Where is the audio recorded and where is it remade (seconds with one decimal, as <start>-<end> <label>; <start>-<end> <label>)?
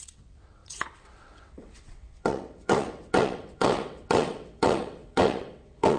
0.0-6.0 remade